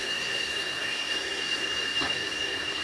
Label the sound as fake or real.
fake